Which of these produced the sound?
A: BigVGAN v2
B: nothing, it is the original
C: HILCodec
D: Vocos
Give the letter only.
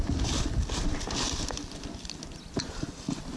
B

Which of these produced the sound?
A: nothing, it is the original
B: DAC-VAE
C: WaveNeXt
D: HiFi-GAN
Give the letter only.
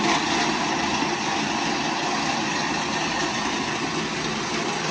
A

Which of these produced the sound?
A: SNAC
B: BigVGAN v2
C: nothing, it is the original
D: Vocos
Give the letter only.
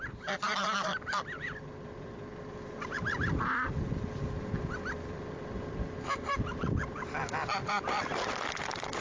B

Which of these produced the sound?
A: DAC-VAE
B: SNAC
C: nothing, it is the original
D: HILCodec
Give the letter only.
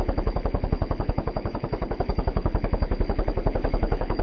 D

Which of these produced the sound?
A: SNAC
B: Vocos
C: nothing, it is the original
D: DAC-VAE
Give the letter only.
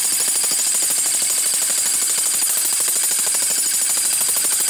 C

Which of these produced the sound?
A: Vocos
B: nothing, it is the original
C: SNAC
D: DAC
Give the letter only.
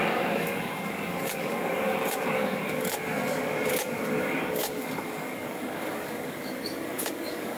D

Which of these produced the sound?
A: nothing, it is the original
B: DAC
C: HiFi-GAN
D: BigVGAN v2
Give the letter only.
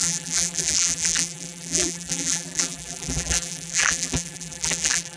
D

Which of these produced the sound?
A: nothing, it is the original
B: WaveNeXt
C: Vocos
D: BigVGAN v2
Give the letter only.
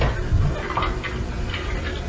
A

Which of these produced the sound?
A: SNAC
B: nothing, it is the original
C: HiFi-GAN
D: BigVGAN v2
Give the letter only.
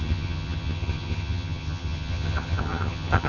C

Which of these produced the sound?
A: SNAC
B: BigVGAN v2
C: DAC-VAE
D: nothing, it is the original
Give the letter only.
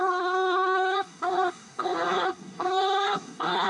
A